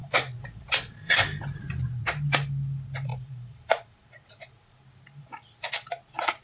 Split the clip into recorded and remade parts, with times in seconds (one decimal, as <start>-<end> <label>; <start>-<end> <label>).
0.0-1.8 remade; 1.8-3.1 recorded; 3.1-4.8 remade; 4.8-6.4 recorded